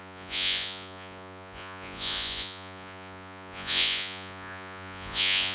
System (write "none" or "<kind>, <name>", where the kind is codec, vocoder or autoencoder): vocoder, Vocos